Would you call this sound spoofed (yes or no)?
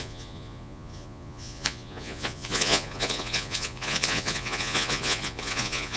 yes